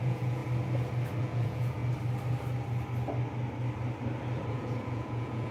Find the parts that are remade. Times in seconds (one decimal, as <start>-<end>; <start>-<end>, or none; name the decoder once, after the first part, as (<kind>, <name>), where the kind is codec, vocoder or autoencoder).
0.0-0.4 (vocoder, Vocos); 1.2-1.8; 4.5-5.5